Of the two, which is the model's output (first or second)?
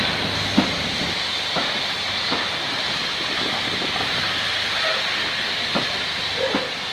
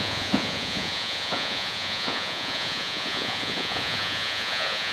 second